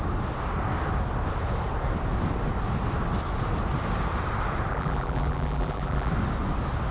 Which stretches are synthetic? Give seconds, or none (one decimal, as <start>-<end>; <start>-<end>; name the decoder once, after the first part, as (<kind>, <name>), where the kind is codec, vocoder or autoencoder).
4.7-6.1 (vocoder, BigVGAN v2)